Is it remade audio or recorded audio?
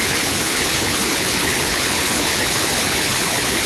remade